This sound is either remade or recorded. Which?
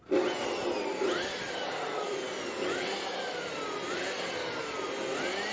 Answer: recorded